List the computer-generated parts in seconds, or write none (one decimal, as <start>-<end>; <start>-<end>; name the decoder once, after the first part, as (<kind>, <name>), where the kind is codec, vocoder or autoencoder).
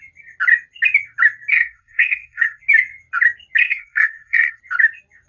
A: 1.5-2.6 (codec, SNAC); 3.6-4.6